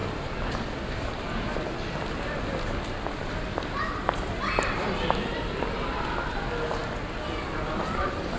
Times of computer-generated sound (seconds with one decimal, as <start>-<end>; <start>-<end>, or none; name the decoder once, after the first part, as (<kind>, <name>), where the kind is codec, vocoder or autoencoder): none